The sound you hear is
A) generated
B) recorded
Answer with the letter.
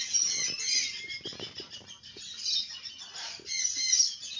B